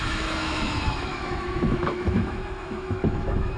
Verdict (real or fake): fake